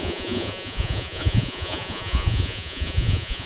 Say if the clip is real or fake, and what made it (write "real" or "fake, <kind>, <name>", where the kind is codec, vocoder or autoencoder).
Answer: fake, vocoder, Vocos